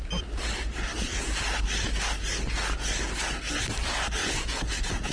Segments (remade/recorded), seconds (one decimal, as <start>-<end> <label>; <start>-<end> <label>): 0.0-4.2 recorded; 4.2-5.1 remade